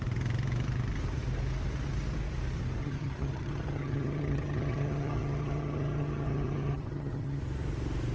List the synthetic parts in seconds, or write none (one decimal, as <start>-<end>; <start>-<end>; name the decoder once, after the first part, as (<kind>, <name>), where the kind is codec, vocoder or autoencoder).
2.8-7.4 (vocoder, HiFi-GAN)